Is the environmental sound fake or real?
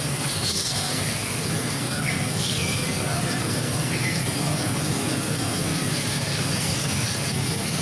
fake